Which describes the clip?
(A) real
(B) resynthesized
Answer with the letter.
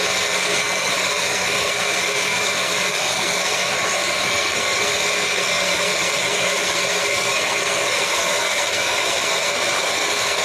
B